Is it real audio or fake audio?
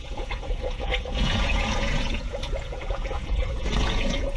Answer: fake